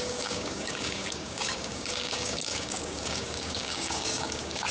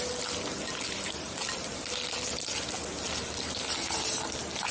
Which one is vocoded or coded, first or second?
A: first